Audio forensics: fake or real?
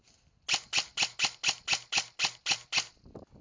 real